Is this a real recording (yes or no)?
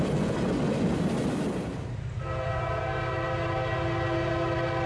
yes